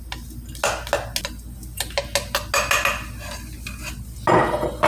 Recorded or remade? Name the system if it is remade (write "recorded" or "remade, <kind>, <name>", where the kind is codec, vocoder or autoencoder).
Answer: recorded